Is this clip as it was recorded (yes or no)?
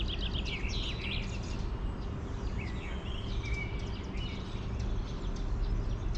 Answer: yes